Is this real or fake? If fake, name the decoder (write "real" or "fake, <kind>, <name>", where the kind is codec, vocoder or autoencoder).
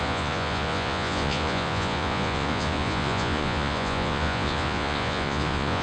fake, vocoder, Vocos